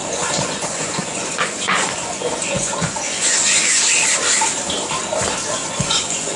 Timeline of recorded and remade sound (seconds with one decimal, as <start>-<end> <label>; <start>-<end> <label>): 0.0-3.8 remade; 3.8-5.6 recorded; 5.6-6.4 remade